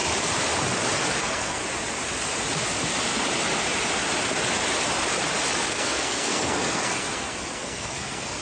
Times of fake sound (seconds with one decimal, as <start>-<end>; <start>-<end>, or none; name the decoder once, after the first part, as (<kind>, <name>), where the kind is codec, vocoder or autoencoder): 1.2-1.6 (codec, SNAC); 5.7-8.4